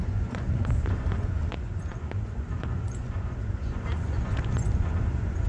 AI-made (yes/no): yes